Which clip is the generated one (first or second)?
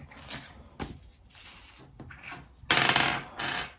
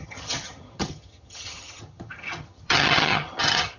second